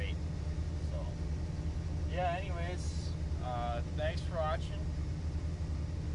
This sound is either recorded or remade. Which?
recorded